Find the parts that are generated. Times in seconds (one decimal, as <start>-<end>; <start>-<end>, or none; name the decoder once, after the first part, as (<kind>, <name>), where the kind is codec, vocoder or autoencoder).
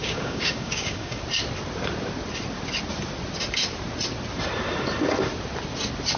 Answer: 0.0-1.2 (codec, DAC)